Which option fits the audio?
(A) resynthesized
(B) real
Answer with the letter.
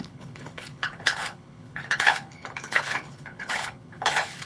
A